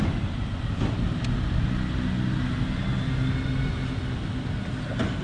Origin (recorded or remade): recorded